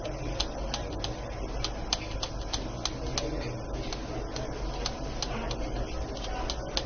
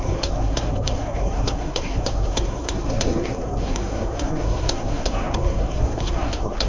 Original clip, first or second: first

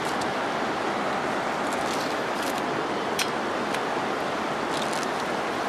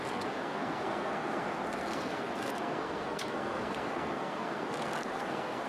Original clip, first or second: first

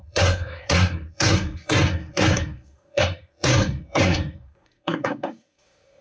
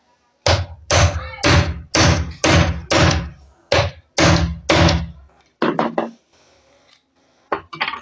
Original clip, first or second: second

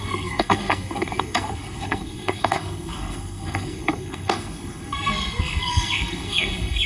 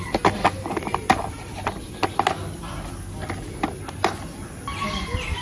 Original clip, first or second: second